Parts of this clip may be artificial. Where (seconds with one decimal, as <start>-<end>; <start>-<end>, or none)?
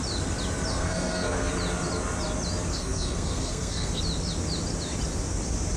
0.7-1.5; 2.7-4.0